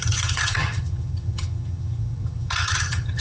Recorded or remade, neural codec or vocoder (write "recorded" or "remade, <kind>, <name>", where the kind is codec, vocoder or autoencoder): remade, vocoder, HiFi-GAN